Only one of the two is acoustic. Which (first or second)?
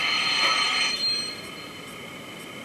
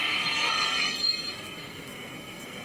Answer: first